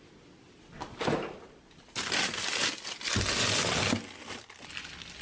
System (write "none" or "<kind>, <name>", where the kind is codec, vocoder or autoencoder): none